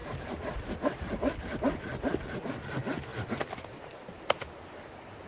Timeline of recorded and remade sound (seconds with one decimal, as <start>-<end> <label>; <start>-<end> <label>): 0.0-0.7 remade; 0.7-5.3 recorded